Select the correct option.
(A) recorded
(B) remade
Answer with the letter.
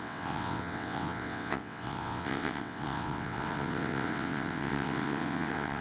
B